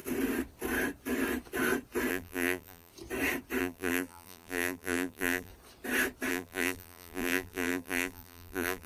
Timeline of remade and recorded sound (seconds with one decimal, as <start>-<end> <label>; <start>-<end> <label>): 0.0-2.1 recorded; 2.1-2.9 remade; 2.9-3.6 recorded; 3.6-5.5 remade; 5.5-6.3 recorded; 6.3-8.9 remade